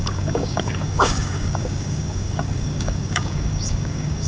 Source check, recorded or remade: remade